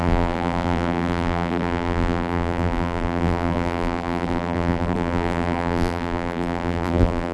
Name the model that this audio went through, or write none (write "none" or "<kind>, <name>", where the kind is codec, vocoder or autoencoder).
vocoder, BigVGAN v2